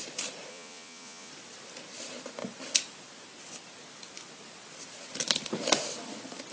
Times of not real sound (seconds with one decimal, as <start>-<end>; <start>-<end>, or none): 0.5-1.3